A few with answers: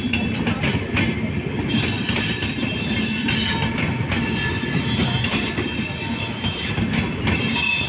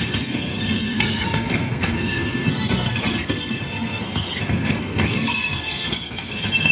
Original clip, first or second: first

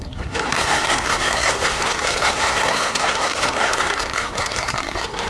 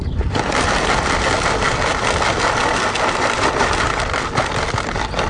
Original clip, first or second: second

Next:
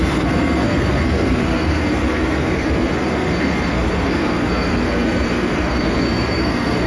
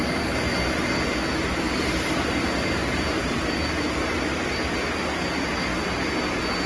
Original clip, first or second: second